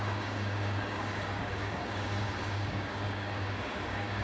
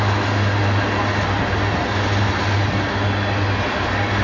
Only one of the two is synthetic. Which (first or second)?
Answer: first